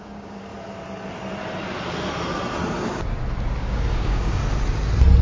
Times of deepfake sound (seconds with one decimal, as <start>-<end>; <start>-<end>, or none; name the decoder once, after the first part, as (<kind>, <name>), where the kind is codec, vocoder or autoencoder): 0.0-0.5 (codec, DAC); 3.6-4.4